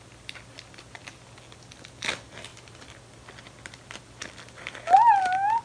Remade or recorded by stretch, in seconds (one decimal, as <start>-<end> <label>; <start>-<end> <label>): 0.0-5.6 recorded